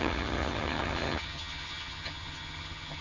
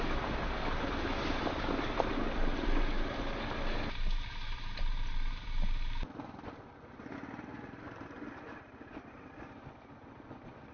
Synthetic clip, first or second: first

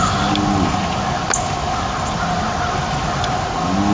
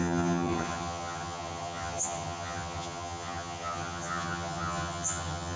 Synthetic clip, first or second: second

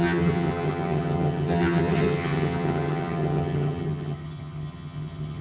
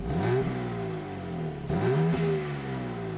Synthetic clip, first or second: first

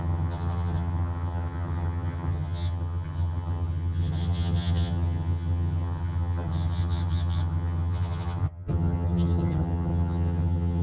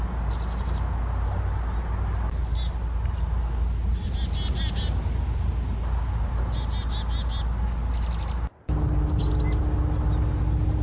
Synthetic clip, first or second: first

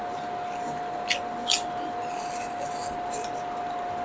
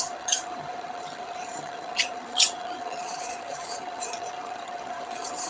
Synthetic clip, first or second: second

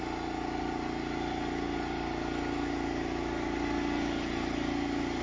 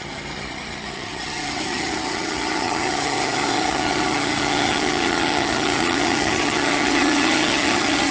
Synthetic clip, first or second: second